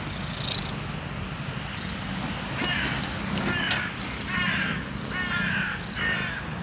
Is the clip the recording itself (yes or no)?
yes